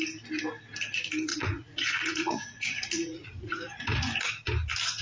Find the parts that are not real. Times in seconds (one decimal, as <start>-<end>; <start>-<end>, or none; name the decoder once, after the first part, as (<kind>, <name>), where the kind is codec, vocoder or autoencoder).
1.3-4.3 (vocoder, Vocos)